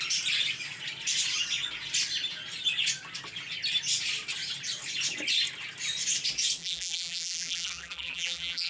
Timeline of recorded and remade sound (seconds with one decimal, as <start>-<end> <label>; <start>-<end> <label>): 0.0-6.6 recorded; 6.6-8.7 remade